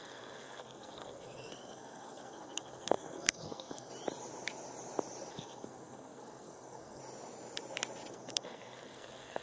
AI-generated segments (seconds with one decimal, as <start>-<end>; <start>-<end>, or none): 0.0-3.9; 5.3-7.0; 8.1-9.4